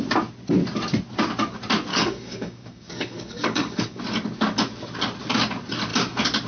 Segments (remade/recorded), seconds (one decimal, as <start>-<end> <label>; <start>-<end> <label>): 0.0-1.9 recorded; 1.9-4.0 remade; 4.0-6.5 recorded